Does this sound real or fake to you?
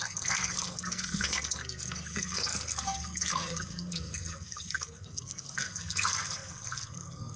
fake